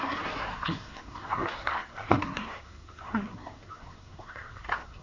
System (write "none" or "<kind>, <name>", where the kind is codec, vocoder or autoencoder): codec, SNAC